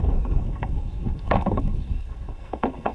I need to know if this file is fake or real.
fake